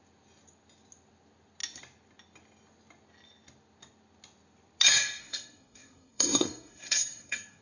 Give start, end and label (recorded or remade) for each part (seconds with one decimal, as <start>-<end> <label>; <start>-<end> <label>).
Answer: 0.0-5.2 recorded; 5.2-7.6 remade